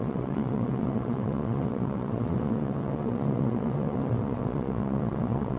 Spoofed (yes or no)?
yes